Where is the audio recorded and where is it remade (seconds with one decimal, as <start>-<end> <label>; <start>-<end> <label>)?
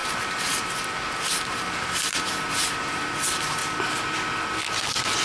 0.0-3.6 remade; 3.6-4.7 recorded; 4.7-5.2 remade